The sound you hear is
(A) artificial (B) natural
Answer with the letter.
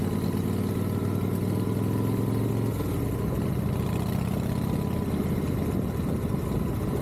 B